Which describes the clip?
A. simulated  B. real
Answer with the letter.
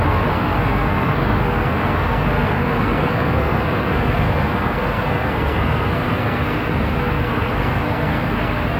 A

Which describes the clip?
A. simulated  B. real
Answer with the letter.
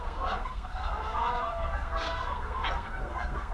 A